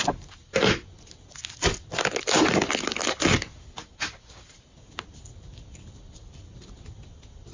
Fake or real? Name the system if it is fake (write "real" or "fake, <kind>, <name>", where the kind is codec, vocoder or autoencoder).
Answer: real